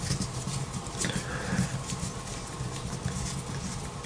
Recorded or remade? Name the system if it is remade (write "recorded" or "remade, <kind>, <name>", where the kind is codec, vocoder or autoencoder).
recorded